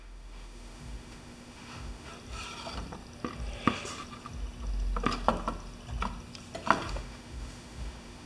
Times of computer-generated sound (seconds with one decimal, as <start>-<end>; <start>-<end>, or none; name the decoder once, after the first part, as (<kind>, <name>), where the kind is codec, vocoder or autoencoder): 0.0-2.1 (autoencoder, DAC-VAE); 6.9-8.3